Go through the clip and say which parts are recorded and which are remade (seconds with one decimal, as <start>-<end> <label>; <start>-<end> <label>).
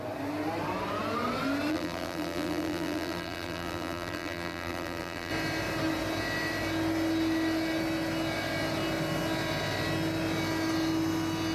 0.0-1.7 recorded; 1.7-5.3 remade; 5.3-11.5 recorded